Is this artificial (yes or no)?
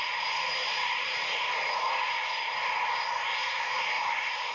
no